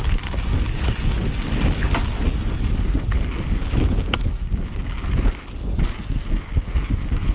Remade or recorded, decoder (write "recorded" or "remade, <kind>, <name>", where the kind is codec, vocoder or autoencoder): recorded